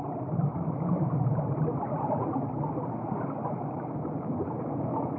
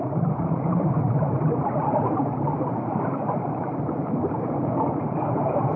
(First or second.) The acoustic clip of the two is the first